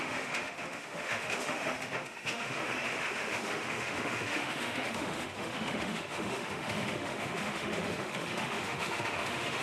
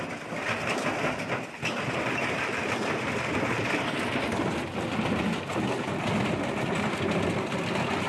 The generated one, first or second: first